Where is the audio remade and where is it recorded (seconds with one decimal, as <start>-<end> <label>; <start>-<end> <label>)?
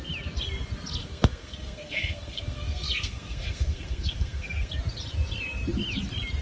0.0-1.0 recorded; 1.0-4.7 remade; 4.7-6.4 recorded